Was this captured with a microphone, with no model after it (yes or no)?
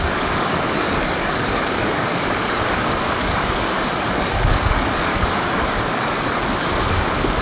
no